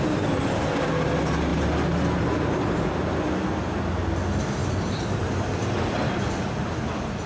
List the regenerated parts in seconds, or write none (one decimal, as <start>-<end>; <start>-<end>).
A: 4.6-6.8

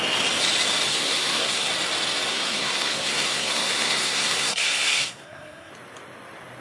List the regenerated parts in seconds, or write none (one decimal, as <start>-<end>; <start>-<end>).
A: 0.9-1.7; 2.3-5.7